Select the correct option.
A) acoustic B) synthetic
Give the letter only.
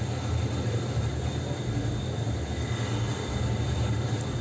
A